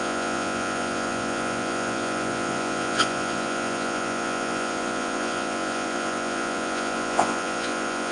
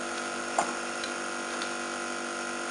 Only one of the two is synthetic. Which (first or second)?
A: first